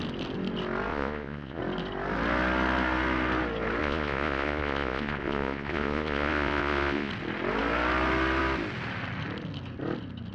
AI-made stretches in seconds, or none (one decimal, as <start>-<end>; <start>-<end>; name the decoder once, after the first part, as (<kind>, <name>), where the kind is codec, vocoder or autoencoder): 0.9-1.6 (vocoder, Vocos); 3.8-7.1